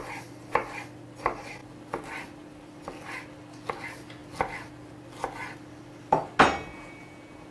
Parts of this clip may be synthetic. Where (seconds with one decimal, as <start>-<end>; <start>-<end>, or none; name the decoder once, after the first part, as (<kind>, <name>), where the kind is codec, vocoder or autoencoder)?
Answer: 6.7-7.5 (vocoder, Vocos)